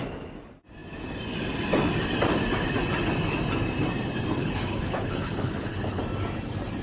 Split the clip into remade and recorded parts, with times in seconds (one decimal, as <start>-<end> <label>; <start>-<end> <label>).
0.0-4.4 recorded; 4.4-6.0 remade; 6.0-6.8 recorded